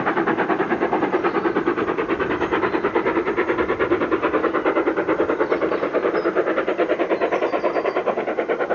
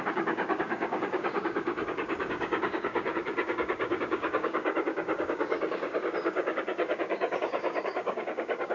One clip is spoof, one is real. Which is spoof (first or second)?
second